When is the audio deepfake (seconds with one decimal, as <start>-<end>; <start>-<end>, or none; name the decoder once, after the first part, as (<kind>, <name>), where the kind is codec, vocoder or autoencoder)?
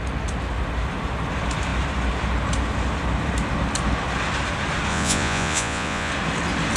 4.9-6.1 (vocoder, Vocos)